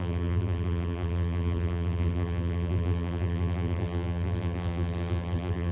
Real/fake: fake